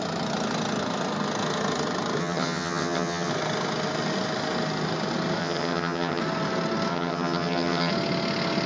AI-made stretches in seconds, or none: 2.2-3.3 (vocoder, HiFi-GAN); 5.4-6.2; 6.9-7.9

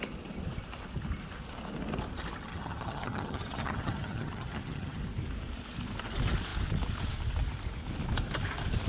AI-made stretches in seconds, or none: 2.5-5.0 (vocoder, HiFi-GAN)

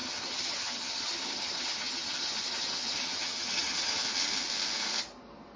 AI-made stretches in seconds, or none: 0.0-4.0 (vocoder, HiFi-GAN)